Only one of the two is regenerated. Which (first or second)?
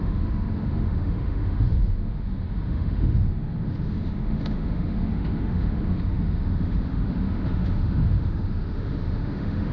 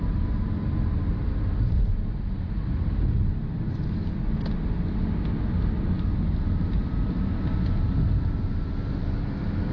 first